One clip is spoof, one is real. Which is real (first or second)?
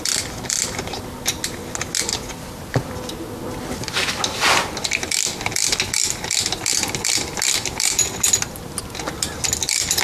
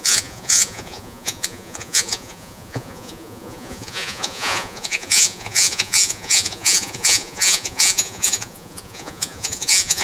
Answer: first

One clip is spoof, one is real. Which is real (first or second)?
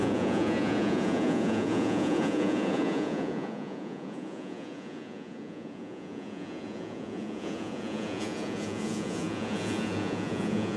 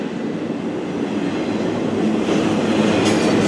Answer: second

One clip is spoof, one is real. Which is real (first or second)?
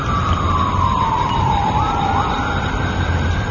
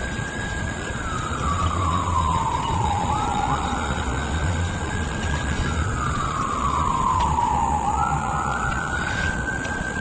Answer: first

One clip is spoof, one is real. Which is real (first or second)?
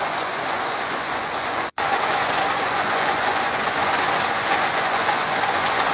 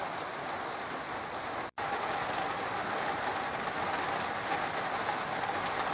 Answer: second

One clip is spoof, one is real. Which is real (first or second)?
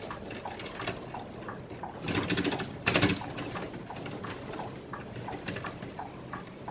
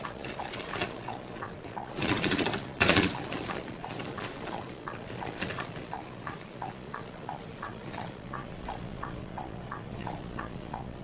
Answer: first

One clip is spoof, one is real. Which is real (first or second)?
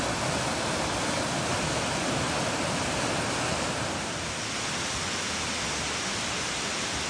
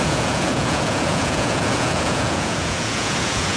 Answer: first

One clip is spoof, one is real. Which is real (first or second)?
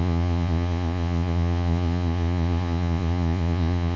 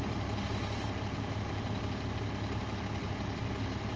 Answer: second